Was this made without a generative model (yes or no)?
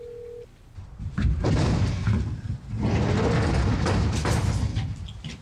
yes